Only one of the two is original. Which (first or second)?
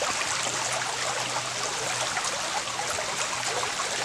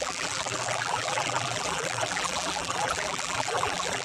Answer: first